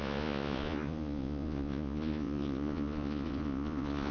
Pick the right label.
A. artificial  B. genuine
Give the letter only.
A